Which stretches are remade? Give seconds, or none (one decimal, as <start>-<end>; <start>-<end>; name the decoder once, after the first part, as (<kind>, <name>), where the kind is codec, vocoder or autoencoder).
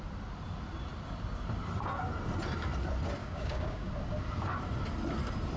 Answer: 3.2-3.9 (codec, DAC)